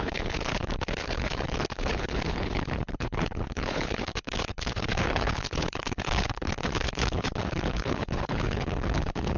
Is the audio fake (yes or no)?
yes